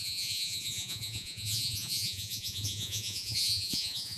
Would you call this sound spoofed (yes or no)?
yes